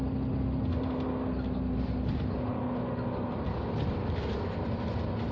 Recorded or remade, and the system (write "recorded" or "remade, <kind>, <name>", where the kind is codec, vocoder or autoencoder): recorded